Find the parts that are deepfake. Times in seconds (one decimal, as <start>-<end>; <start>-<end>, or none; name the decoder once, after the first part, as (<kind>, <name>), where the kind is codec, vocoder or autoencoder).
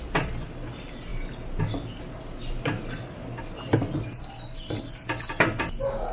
none